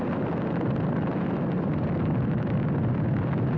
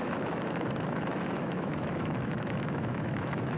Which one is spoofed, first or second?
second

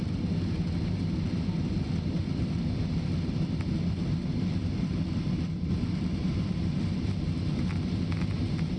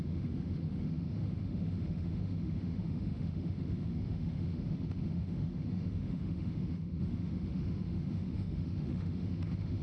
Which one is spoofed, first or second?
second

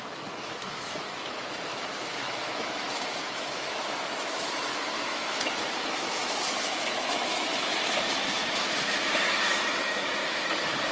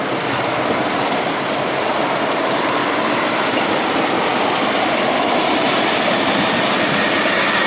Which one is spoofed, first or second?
first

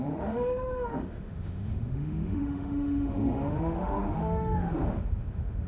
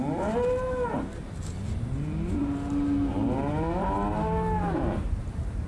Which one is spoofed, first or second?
first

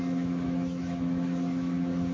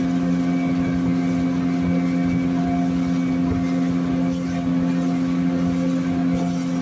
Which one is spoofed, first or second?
first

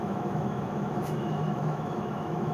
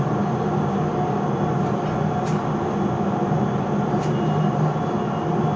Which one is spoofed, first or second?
first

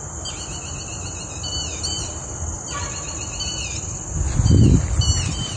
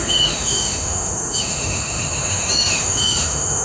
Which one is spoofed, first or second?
second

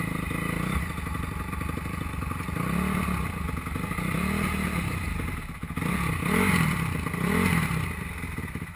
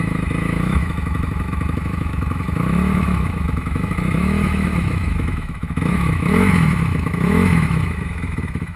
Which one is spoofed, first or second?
second